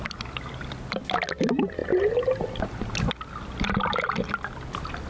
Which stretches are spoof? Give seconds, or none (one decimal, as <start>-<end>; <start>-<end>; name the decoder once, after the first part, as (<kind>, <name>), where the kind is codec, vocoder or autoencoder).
none